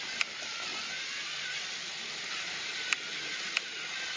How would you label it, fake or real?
real